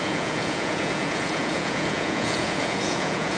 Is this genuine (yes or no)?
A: no